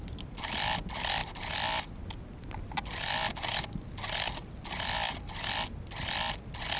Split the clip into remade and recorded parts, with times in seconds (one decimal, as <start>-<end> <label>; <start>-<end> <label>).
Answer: 0.0-6.8 recorded